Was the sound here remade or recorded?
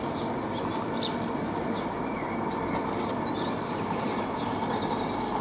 recorded